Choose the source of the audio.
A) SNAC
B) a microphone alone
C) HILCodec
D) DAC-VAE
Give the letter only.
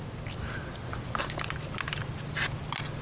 B